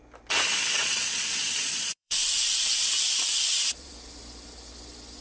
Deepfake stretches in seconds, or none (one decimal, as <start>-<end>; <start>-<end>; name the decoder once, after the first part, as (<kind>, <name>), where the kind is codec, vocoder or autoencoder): 0.8-3.9 (vocoder, Vocos)